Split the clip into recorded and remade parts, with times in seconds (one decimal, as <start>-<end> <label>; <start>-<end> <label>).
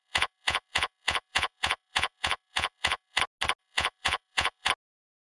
0.0-3.2 remade; 3.2-3.6 recorded; 3.6-4.7 remade; 4.7-5.3 recorded